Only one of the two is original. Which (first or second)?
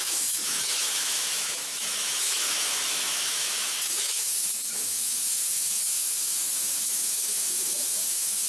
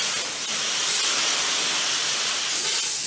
second